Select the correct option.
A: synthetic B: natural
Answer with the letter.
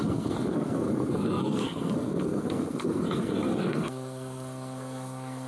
A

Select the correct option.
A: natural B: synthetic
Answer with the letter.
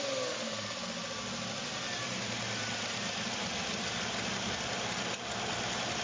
A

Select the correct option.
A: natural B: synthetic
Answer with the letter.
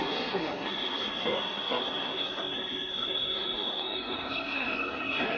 B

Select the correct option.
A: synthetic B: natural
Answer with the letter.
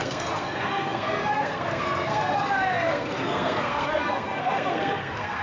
A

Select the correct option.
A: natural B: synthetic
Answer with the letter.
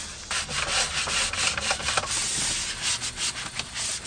A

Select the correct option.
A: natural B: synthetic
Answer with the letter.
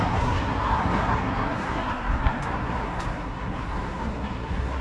B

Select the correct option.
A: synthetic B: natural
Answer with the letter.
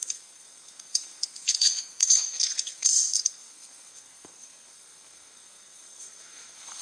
A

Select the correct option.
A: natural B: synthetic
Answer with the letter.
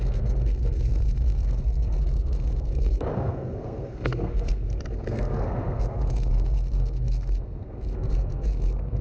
B